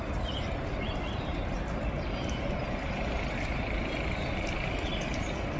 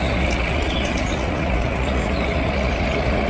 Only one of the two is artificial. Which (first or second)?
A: second